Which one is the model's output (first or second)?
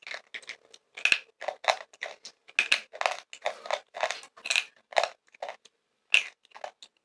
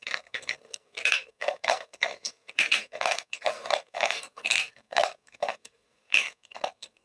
second